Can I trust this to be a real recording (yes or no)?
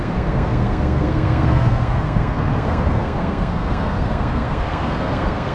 no